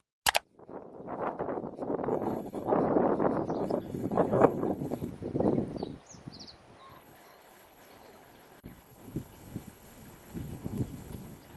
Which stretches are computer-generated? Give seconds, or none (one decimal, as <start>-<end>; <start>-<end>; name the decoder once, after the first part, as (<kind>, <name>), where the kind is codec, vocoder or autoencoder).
2.1-2.7 (codec, HILCodec); 3.6-5.1; 6.9-11.6

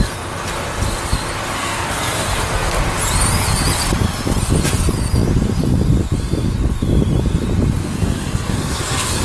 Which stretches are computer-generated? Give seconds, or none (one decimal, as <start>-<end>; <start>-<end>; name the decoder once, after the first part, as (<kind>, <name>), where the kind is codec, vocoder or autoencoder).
1.6-2.8 (codec, SNAC); 7.8-9.2

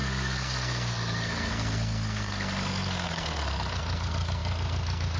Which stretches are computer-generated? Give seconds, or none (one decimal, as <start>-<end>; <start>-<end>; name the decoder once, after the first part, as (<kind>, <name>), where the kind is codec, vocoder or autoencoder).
0.0-5.2 (codec, SNAC)